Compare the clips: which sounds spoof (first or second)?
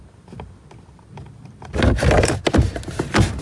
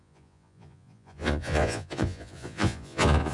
second